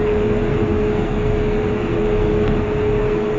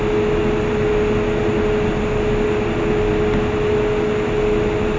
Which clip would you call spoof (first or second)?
first